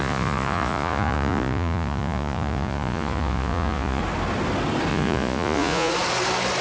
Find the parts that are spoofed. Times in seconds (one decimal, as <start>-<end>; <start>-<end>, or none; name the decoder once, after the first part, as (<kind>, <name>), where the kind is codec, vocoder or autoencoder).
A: 0.0-4.0 (vocoder, Vocos); 4.9-5.9